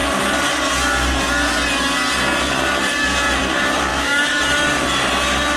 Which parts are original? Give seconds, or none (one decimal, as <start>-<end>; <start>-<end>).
0.0-3.9; 4.4-5.6